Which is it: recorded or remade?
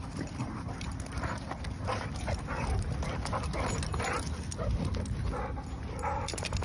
recorded